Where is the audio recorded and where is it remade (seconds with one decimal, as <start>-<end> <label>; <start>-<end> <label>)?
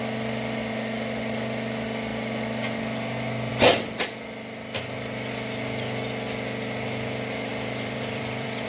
0.0-7.5 recorded; 7.5-8.7 remade